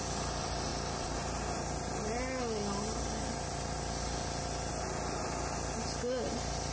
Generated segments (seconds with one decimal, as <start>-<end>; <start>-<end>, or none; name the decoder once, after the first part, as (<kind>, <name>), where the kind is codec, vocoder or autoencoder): none